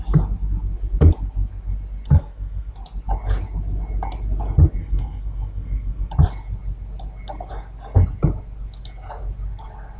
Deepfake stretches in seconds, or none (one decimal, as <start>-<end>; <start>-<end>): 2.1-2.7; 4.8-6.1